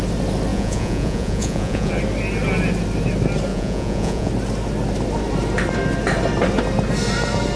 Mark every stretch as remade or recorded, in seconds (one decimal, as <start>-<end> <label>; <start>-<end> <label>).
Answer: 0.0-0.5 recorded; 0.5-1.9 remade; 1.9-3.5 recorded; 3.5-4.3 remade; 4.3-7.6 recorded